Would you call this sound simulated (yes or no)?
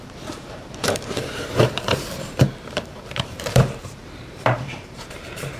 yes